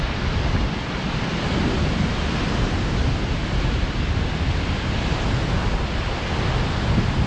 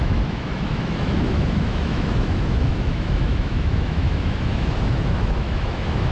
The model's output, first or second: second